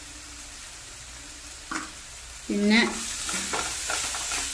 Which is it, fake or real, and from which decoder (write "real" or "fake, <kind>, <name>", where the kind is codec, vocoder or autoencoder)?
real